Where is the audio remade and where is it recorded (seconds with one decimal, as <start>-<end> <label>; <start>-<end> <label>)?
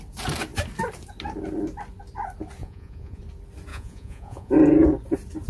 0.0-2.6 recorded; 2.6-3.2 remade; 3.2-3.7 recorded; 3.7-4.5 remade; 4.5-5.5 recorded